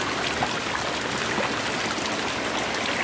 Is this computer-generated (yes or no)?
no